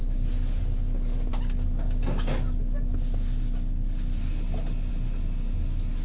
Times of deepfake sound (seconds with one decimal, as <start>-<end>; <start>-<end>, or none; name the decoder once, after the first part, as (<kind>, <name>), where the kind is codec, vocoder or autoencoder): none